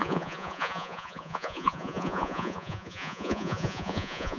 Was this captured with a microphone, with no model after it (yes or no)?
no